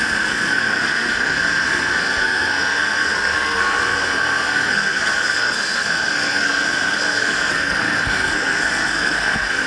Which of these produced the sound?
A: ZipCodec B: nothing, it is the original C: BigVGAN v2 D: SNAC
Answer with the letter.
D